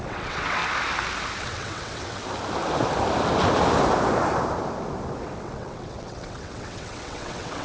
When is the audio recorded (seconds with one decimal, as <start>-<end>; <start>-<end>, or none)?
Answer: 0.6-1.4; 2.2-5.4